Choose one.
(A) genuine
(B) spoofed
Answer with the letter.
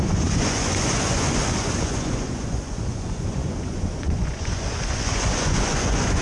B